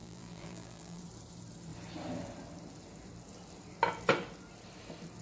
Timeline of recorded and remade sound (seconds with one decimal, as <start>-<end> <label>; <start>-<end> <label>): 0.0-1.0 remade; 1.0-5.2 recorded